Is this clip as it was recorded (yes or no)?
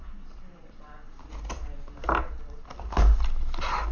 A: yes